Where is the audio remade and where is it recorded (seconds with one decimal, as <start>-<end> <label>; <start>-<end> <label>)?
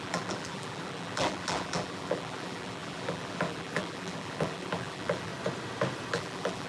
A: 0.0-5.3 remade; 5.3-6.1 recorded; 6.1-6.7 remade